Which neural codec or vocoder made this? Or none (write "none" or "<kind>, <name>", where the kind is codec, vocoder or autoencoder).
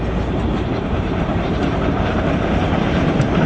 vocoder, BigVGAN v2